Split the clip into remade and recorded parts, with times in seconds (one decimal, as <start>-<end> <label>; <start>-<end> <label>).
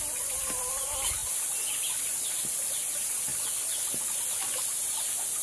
0.0-5.4 recorded